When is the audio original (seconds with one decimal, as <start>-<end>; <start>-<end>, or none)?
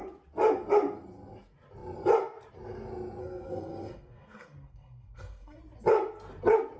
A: 0.0-3.2; 5.6-6.8